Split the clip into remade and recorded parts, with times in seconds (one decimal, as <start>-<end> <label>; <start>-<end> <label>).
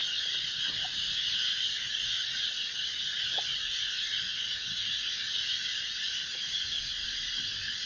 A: 0.0-2.2 recorded; 2.2-3.6 remade; 3.6-7.9 recorded